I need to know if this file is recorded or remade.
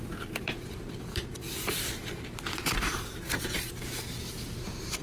remade